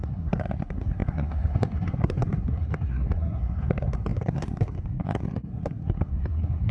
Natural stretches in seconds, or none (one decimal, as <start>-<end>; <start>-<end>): none